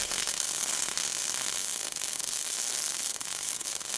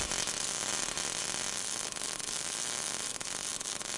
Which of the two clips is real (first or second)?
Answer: second